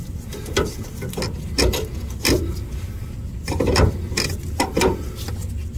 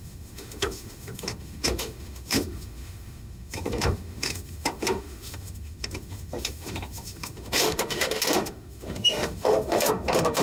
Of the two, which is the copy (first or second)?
second